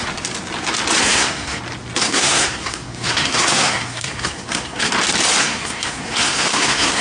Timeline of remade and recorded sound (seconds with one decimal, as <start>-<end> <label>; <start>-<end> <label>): 0.0-1.0 recorded; 1.0-1.6 remade; 1.6-2.0 recorded; 2.0-4.9 remade; 4.9-5.4 recorded; 5.4-7.0 remade